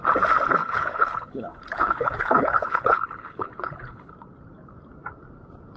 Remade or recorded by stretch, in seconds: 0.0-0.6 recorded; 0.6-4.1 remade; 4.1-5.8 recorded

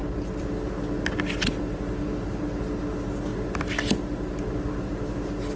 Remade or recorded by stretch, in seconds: 0.0-5.6 recorded

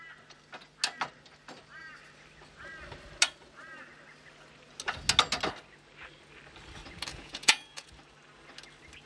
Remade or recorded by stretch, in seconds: 0.0-7.1 recorded; 7.1-7.9 remade; 7.9-9.1 recorded